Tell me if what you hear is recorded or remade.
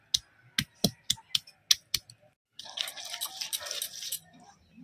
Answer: recorded